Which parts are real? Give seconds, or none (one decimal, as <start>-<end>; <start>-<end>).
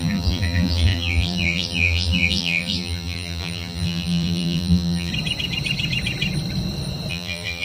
5.1-7.1